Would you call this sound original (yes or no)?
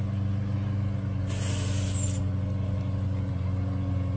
yes